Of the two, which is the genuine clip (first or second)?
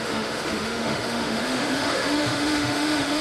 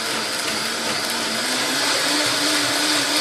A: second